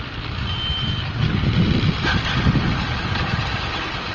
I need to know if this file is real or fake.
real